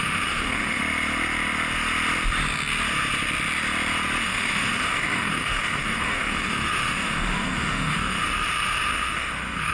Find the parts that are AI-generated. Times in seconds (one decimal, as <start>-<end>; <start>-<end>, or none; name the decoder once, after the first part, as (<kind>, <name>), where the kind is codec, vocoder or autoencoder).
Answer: 0.0-0.8 (autoencoder, DAC-VAE); 4.2-9.7